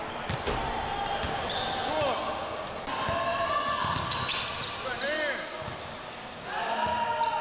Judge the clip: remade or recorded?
recorded